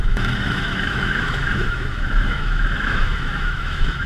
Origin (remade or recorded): remade